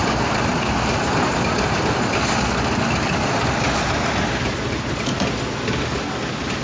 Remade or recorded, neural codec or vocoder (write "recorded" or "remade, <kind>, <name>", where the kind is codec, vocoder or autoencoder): recorded